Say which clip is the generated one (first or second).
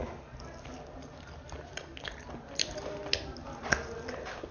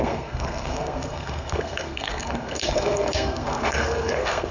second